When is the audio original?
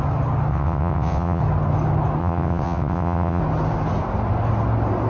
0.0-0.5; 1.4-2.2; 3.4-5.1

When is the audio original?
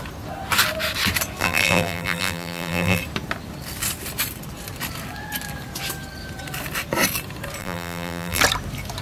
0.0-1.4; 3.0-7.6; 8.4-9.0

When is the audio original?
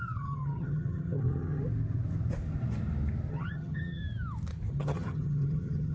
1.6-3.3; 4.0-4.7